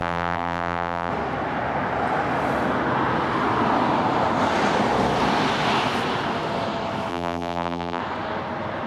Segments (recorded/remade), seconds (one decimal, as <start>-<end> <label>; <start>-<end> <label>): 0.0-1.1 remade; 1.1-7.1 recorded; 7.1-8.0 remade; 8.0-8.9 recorded